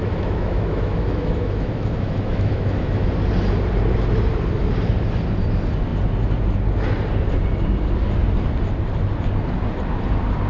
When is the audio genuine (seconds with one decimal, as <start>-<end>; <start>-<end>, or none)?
3.1-10.5